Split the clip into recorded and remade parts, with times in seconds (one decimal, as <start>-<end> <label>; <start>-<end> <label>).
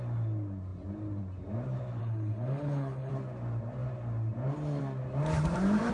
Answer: 0.0-2.0 recorded; 2.0-3.1 remade; 3.1-5.9 recorded